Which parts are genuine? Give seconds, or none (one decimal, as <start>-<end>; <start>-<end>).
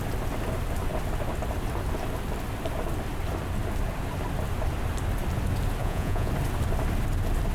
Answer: 0.0-5.8; 6.3-7.5